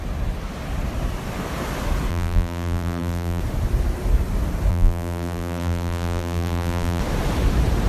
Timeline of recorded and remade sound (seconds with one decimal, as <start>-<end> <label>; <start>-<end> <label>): 0.0-2.1 recorded; 2.1-3.4 remade; 3.4-4.7 recorded; 4.7-7.0 remade; 7.0-7.9 recorded